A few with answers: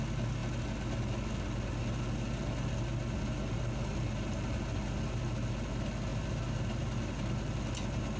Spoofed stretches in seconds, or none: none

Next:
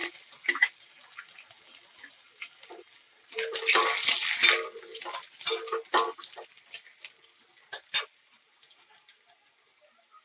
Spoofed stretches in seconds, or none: 4.9-5.4

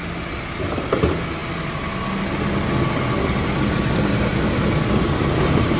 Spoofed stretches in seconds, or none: none

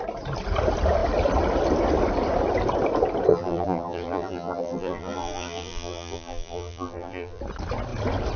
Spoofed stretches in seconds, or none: 3.3-7.4

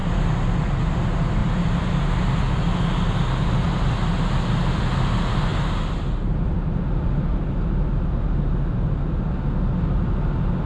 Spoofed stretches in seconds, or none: 0.0-0.5; 1.4-2.4

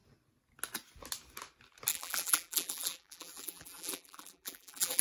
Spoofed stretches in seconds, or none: 1.9-5.0

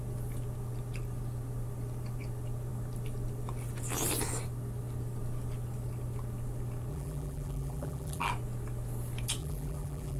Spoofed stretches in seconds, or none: 6.9-8.3; 9.4-10.2